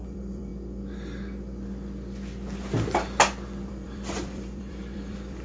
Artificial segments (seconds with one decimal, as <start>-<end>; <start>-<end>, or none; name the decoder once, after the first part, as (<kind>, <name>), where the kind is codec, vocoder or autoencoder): 0.0-0.5 (vocoder, BigVGAN v2); 3.7-5.4